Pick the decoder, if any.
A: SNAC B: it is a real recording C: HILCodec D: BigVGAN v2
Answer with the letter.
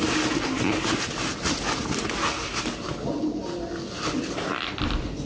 B